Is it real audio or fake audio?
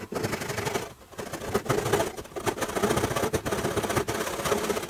real